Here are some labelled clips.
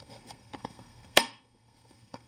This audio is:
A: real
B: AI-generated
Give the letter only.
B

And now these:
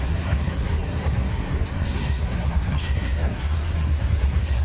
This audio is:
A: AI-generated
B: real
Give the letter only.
A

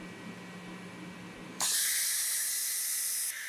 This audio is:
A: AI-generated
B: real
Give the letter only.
B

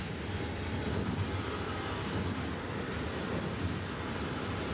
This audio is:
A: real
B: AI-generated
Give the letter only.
A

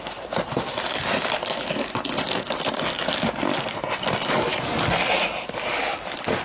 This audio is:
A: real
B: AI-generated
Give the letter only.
A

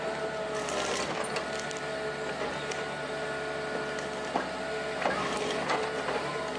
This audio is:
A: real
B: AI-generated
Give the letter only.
A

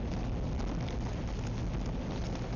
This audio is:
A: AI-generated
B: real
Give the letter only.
B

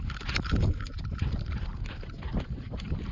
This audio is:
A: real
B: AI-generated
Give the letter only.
A